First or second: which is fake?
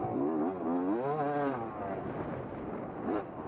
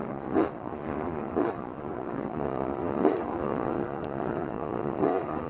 second